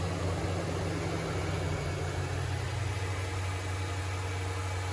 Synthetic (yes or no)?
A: no